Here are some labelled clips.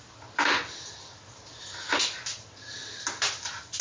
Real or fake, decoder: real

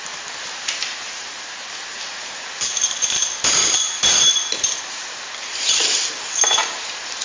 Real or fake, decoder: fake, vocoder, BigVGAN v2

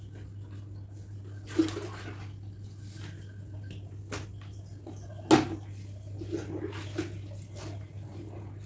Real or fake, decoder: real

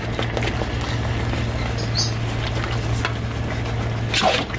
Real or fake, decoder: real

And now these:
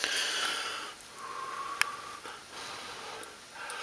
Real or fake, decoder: real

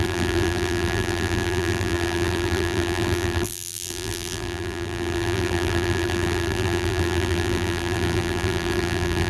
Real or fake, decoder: fake, vocoder, BigVGAN v2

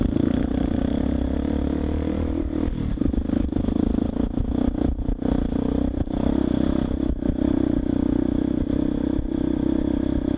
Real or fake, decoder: real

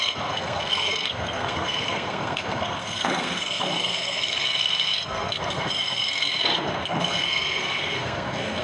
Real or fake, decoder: fake, codec, SNAC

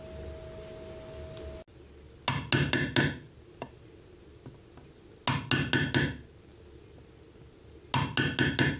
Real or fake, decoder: real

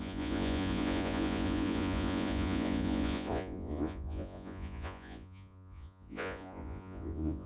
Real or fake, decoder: fake, vocoder, Vocos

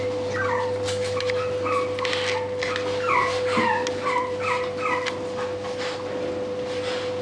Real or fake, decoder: real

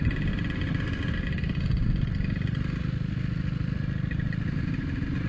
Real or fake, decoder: real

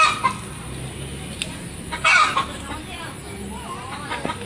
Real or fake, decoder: real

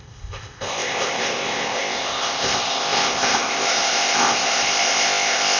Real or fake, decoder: fake, codec, ZipCodec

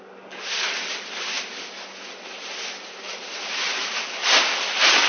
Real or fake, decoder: real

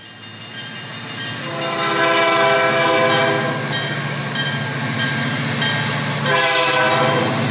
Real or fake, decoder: real